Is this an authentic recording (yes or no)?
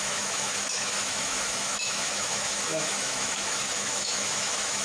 no